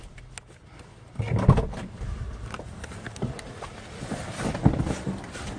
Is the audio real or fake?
real